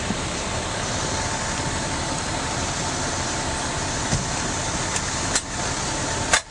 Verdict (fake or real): fake